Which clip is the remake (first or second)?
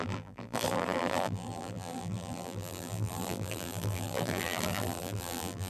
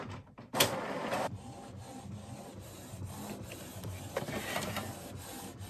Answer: first